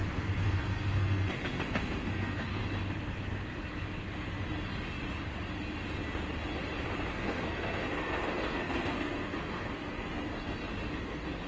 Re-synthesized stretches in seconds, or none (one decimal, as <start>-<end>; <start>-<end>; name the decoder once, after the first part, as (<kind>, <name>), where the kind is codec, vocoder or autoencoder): 0.0-2.6 (codec, SNAC); 7.1-10.1; 10.9-11.5